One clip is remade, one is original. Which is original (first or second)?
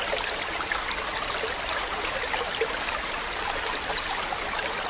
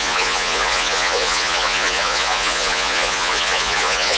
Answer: first